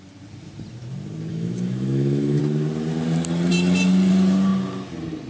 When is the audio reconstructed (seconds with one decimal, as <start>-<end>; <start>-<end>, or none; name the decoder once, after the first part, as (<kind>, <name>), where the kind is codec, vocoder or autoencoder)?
1.3-2.4 (autoencoder, DAC-VAE)